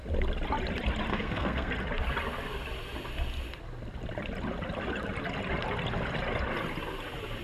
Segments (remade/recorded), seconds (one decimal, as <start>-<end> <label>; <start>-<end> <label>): 0.0-1.1 recorded; 1.1-1.7 remade; 1.7-7.4 recorded